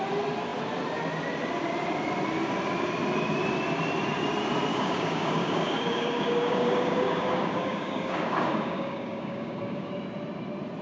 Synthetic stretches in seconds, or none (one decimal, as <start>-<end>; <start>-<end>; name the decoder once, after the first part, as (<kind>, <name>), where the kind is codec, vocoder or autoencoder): 4.7-9.9 (codec, DAC)